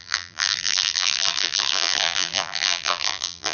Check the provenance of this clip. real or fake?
fake